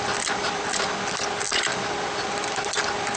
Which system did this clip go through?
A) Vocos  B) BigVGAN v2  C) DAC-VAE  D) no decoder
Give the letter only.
D